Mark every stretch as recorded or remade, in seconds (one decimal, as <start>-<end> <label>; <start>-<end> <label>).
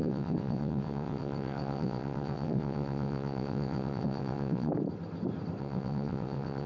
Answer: 0.0-4.7 remade; 4.7-5.6 recorded; 5.6-6.7 remade